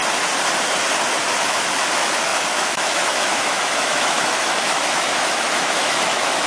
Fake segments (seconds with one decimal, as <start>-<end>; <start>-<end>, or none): 1.2-6.5